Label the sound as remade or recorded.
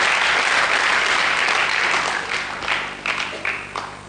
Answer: recorded